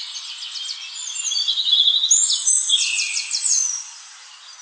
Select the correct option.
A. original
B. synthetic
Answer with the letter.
A